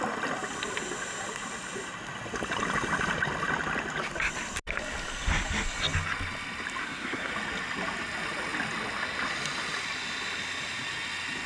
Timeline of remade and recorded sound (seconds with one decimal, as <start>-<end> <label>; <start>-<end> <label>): 0.0-6.8 recorded; 6.8-7.3 remade; 7.3-11.5 recorded